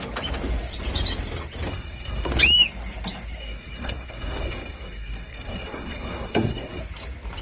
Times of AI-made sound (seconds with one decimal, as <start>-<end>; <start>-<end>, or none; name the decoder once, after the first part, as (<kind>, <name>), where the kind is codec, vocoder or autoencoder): 1.7-2.3 (codec, SNAC); 3.4-6.8